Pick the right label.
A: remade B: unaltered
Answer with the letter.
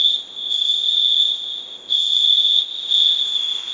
A